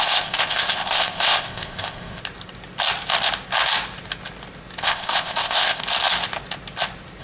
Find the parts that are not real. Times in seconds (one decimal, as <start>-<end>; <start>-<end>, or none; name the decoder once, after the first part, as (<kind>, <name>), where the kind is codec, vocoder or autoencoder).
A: 0.0-2.2 (codec, ZipCodec); 4.8-5.8